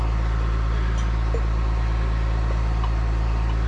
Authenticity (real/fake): real